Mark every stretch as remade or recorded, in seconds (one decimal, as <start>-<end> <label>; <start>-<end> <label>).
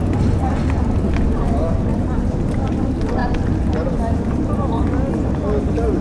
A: 0.0-6.0 recorded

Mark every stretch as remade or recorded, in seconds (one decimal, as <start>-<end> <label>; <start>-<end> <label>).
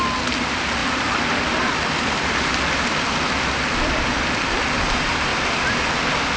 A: 0.0-0.8 recorded; 0.8-4.6 remade; 4.6-5.3 recorded; 5.3-6.0 remade; 6.0-6.4 recorded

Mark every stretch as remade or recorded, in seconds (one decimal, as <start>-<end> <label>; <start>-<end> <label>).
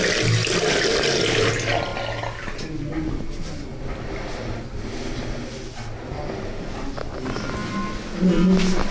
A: 0.0-8.9 recorded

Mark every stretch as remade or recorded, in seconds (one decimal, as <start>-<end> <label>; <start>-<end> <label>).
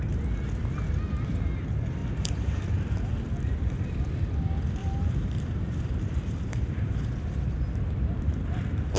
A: 0.0-2.0 recorded; 2.0-2.7 remade; 2.7-4.8 recorded; 4.8-7.1 remade; 7.1-9.0 recorded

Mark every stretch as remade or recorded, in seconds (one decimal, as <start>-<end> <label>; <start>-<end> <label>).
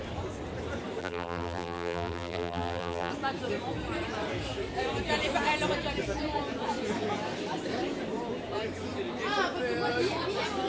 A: 0.0-1.0 recorded; 1.0-3.1 remade; 3.1-10.7 recorded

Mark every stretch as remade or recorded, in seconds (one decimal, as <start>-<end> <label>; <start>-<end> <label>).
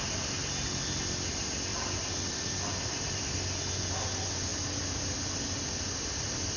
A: 0.0-1.7 recorded; 1.7-3.2 remade; 3.2-6.6 recorded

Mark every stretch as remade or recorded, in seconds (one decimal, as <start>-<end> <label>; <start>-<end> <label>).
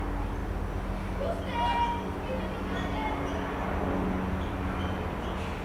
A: 0.0-5.6 recorded